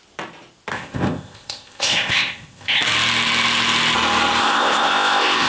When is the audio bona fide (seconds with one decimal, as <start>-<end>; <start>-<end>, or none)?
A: 0.0-0.7; 2.8-4.4